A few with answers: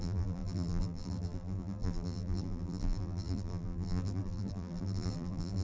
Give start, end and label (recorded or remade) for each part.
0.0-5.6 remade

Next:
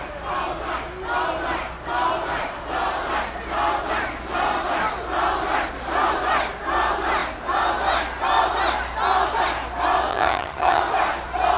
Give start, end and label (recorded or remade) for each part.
0.0-10.1 recorded; 10.1-10.8 remade; 10.8-11.6 recorded

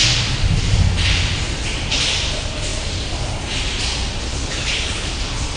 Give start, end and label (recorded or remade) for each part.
0.0-4.3 recorded; 4.3-5.1 remade; 5.1-5.6 recorded

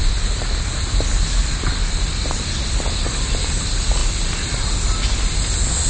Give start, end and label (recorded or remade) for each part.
0.0-5.9 recorded

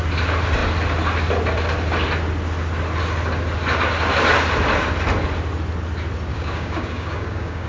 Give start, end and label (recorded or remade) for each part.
0.0-6.3 recorded; 6.3-7.7 remade

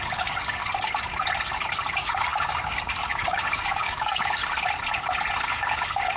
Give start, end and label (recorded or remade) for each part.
0.0-0.6 remade; 0.6-1.9 recorded; 1.9-4.4 remade; 4.4-5.5 recorded; 5.5-6.2 remade